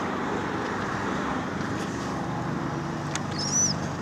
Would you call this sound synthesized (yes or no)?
no